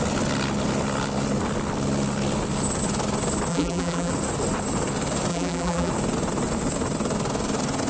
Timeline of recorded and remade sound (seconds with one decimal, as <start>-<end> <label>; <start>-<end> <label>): 0.0-3.5 recorded; 3.5-4.1 remade; 4.1-5.3 recorded; 5.3-5.9 remade; 5.9-7.9 recorded